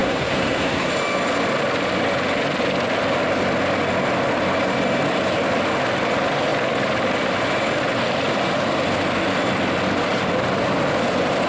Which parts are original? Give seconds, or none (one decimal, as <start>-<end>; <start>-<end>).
0.9-11.5